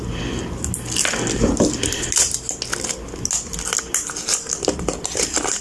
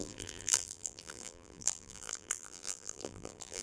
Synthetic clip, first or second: second